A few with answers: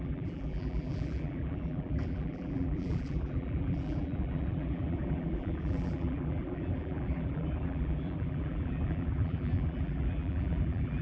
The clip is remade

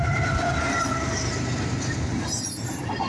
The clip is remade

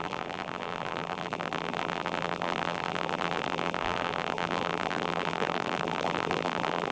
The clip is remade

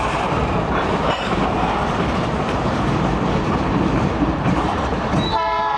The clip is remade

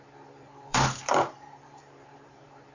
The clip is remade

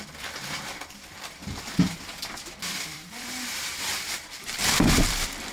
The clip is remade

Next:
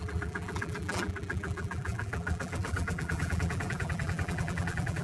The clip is remade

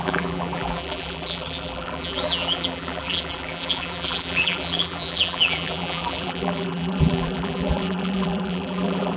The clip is remade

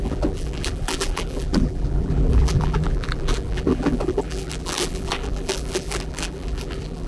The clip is remade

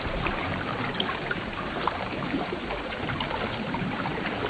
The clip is remade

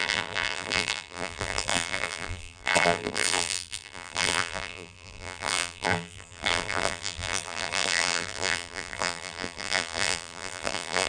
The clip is remade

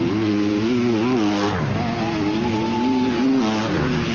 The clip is recorded